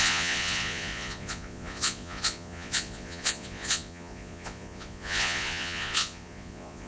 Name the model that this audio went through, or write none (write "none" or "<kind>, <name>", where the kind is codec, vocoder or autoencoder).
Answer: vocoder, Vocos